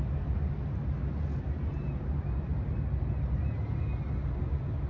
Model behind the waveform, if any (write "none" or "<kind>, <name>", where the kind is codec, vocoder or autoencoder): none